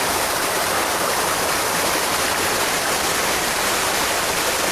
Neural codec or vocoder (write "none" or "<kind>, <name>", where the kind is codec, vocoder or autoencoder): none